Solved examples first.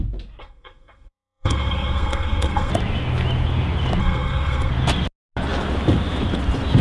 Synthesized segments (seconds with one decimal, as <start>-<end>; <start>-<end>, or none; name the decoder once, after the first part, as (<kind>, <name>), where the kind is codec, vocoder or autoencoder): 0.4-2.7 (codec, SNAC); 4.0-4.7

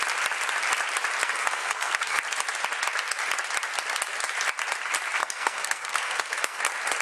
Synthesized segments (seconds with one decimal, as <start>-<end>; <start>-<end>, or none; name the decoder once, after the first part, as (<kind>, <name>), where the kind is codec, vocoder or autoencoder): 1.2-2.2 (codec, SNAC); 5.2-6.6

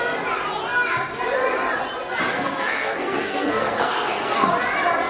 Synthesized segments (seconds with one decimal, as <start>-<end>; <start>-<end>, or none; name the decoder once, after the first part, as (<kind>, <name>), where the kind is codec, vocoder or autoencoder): 2.3-4.5 (codec, SNAC)

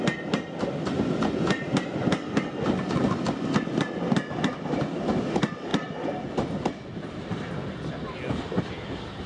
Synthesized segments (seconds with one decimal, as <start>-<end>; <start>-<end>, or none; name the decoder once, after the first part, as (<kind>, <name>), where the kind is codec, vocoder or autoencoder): none